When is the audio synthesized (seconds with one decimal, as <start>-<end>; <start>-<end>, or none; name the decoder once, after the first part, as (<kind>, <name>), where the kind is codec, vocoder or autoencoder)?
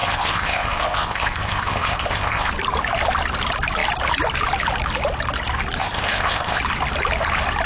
0.0-2.5 (codec, ZipCodec); 5.8-6.6